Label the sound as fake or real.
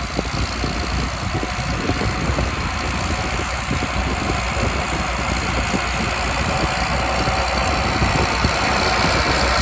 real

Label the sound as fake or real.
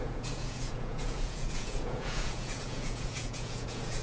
fake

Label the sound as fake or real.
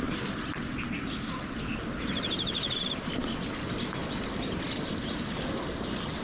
real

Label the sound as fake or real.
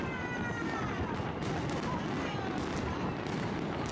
real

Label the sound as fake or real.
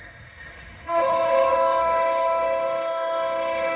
fake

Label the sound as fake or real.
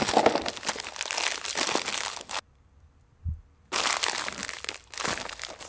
real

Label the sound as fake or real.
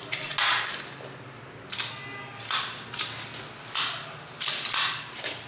real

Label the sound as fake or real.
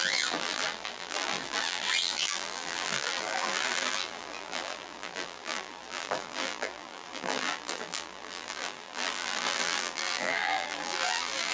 fake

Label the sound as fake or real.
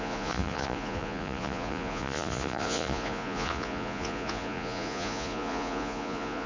fake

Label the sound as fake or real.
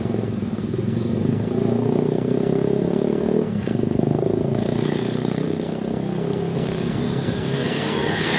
fake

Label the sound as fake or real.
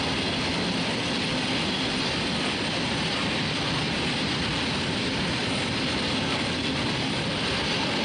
real